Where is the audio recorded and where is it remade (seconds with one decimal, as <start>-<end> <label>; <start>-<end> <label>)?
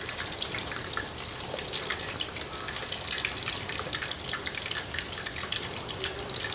0.0-6.5 remade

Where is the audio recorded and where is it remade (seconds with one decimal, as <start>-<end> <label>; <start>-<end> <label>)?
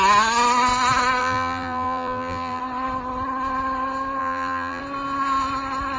0.0-1.2 recorded; 1.2-2.6 remade; 2.6-4.2 recorded; 4.2-4.8 remade; 4.8-6.0 recorded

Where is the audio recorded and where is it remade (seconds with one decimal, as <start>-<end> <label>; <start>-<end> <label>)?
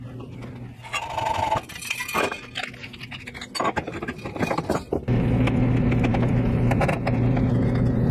0.0-6.1 recorded; 6.1-6.8 remade; 6.8-8.1 recorded